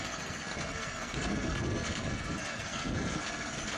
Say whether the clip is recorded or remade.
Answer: remade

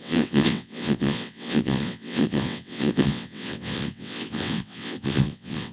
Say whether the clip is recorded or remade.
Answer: remade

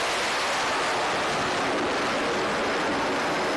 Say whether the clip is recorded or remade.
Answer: recorded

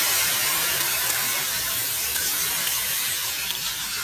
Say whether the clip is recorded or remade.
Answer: remade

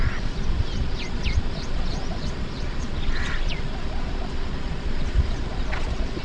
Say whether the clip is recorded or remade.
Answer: remade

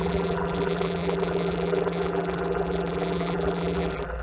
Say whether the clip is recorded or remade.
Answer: remade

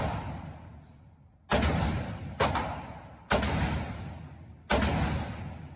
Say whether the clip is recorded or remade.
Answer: recorded